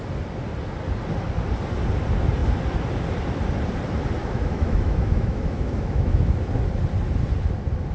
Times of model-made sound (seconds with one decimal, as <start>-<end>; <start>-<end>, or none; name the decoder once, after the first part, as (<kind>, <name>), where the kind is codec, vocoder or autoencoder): 4.2-6.5 (autoencoder, DAC-VAE)